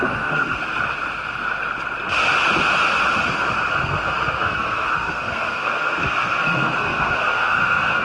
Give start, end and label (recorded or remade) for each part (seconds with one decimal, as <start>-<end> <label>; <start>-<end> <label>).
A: 0.0-0.6 remade; 0.6-3.7 recorded; 3.7-8.0 remade

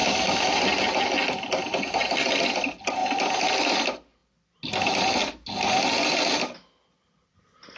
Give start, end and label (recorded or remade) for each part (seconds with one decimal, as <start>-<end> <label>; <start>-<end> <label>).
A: 0.0-0.5 remade; 0.5-7.8 recorded

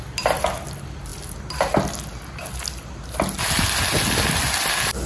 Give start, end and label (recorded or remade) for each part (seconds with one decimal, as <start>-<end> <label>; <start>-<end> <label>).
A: 0.0-5.1 recorded

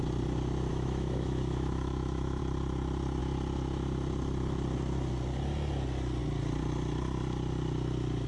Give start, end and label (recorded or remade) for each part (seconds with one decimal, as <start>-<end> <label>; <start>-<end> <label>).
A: 0.0-0.7 recorded; 0.7-2.4 remade; 2.4-8.3 recorded

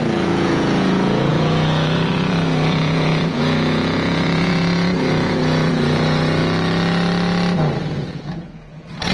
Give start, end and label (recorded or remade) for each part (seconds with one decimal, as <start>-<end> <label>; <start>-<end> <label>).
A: 0.0-6.4 remade; 6.4-7.8 recorded; 7.8-9.1 remade

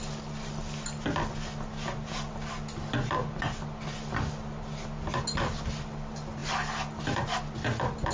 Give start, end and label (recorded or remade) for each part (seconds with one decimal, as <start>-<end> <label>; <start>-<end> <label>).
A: 0.0-8.1 recorded

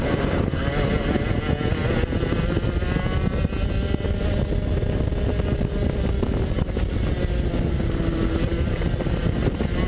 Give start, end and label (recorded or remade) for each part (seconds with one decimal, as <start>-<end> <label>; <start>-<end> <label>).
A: 0.0-9.9 recorded

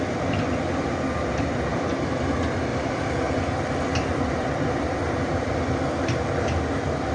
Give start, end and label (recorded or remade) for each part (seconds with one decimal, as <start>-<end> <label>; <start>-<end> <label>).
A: 0.0-1.7 recorded; 1.7-2.3 remade; 2.3-2.7 recorded; 2.7-3.4 remade; 3.4-3.9 recorded; 3.9-5.7 remade; 5.7-7.1 recorded